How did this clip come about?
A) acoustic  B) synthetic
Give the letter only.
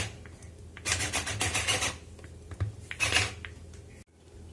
A